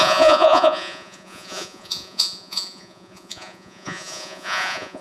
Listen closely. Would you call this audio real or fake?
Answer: fake